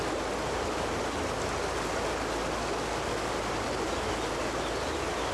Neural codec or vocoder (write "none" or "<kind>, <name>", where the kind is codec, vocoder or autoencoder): none